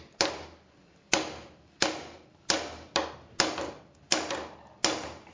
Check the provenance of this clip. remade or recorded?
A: recorded